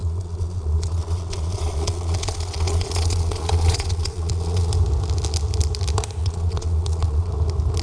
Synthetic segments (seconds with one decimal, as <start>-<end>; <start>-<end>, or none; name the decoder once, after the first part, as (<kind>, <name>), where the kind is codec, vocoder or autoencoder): 0.0-4.7 (vocoder, Vocos); 6.2-7.3